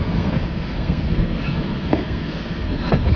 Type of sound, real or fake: fake